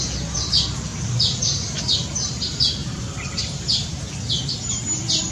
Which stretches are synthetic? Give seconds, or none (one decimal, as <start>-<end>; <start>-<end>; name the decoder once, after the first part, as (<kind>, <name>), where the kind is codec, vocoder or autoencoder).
2.8-4.0 (vocoder, BigVGAN v2)